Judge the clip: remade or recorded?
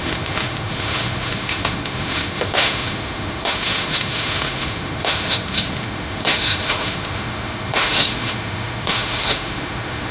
remade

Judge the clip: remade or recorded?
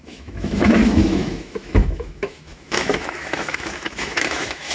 remade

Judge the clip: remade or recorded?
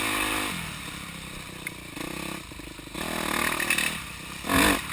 recorded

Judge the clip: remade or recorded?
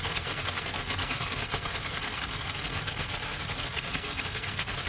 remade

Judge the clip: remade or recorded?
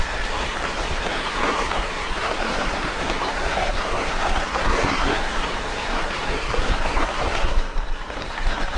remade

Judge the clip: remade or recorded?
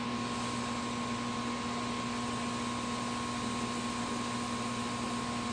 recorded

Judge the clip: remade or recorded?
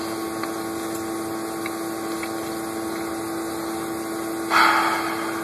recorded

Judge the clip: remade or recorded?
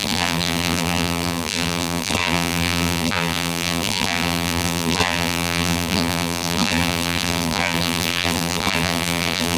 remade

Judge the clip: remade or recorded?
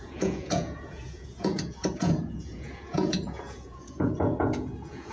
remade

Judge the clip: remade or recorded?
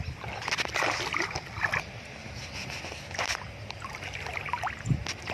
recorded